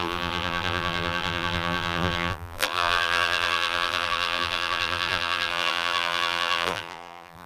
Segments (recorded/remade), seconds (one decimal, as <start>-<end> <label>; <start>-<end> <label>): 0.0-7.5 remade